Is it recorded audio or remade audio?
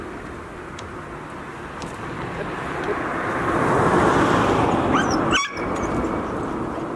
recorded